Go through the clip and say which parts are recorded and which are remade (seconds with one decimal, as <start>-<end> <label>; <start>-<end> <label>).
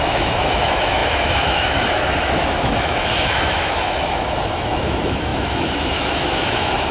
0.0-6.9 remade